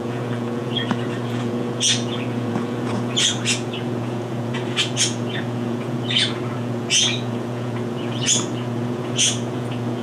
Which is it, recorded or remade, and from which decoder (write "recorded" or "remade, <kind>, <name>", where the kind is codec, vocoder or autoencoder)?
remade, vocoder, Vocos